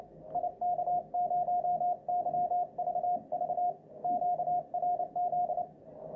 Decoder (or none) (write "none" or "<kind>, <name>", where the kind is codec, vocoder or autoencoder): none